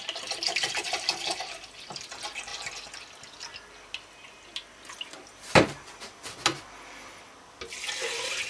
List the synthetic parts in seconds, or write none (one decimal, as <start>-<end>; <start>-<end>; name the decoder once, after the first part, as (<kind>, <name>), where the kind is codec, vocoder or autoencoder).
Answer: none